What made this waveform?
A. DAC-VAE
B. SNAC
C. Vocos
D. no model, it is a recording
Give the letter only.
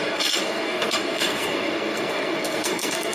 B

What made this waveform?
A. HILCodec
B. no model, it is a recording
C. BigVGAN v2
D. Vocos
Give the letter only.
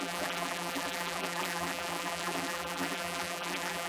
C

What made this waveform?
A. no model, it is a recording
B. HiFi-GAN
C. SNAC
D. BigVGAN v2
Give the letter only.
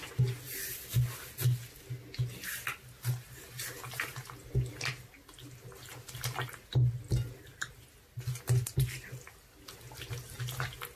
A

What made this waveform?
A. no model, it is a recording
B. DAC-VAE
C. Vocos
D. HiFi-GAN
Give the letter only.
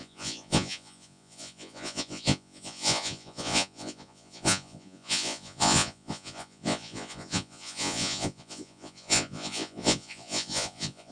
C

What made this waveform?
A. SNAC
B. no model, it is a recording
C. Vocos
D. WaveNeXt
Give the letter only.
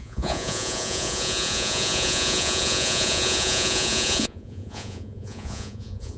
C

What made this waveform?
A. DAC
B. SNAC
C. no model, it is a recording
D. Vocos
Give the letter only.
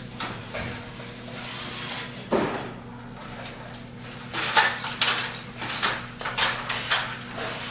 C